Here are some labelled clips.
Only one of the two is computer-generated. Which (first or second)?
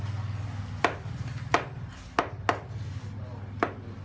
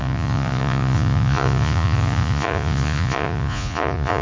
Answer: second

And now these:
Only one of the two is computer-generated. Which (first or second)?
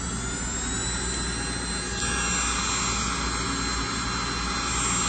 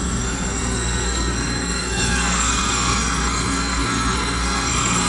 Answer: second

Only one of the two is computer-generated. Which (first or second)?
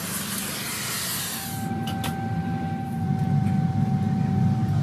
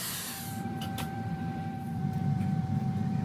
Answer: second